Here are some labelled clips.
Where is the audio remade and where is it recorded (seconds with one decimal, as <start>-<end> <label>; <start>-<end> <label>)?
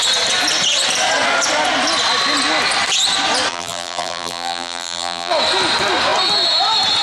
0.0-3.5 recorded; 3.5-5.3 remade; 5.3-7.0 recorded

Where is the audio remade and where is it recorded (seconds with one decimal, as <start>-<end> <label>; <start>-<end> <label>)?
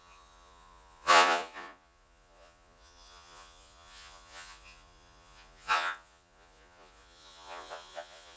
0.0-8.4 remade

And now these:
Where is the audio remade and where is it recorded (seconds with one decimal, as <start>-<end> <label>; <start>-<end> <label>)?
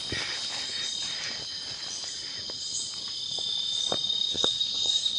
0.0-4.3 recorded; 4.3-5.2 remade